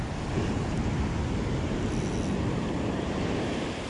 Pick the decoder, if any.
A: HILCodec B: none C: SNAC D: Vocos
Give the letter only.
B